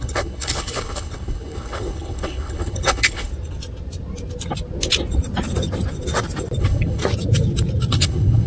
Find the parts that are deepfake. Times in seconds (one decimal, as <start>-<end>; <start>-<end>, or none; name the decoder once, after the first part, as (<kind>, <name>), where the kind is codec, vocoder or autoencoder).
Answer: 0.0-3.3 (codec, HILCodec); 6.6-7.0; 7.9-8.5